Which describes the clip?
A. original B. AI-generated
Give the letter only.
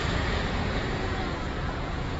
B